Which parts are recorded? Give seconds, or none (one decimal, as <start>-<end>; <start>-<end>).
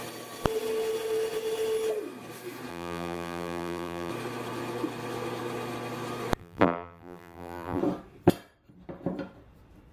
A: 0.0-2.7; 4.1-6.4; 7.8-9.9